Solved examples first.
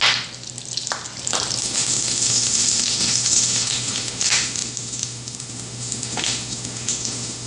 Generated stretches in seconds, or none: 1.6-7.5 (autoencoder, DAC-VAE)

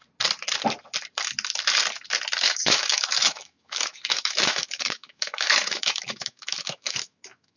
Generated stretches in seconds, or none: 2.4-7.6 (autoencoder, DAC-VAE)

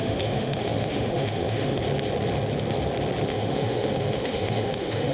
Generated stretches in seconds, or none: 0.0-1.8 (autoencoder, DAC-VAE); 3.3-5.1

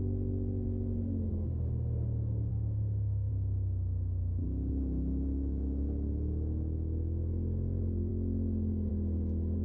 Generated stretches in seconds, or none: 2.5-3.3 (autoencoder, DAC-VAE)